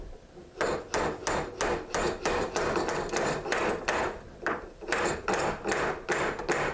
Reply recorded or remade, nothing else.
recorded